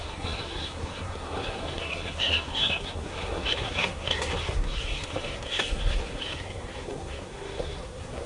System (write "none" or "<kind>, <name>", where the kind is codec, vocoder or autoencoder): codec, SNAC